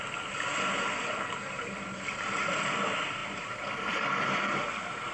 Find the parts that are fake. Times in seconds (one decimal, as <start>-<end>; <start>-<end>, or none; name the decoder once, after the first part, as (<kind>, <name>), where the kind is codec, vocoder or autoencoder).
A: none